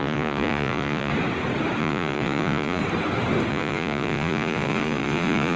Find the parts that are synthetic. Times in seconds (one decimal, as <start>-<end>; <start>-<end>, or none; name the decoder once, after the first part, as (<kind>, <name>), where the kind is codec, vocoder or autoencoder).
0.0-1.1 (vocoder, Vocos); 1.8-2.8; 3.5-5.6